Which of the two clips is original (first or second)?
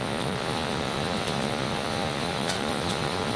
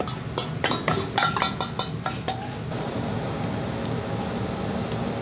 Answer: second